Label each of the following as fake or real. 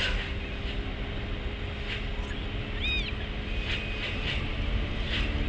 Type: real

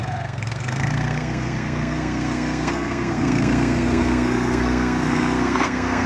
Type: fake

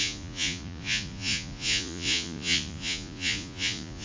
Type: fake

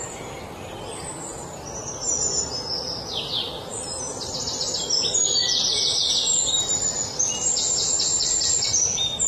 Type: real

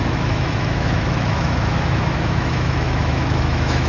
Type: fake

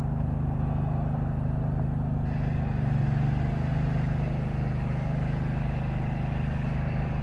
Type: real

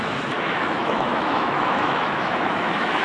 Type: fake